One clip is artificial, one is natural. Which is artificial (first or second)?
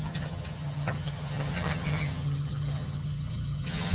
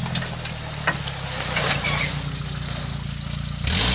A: first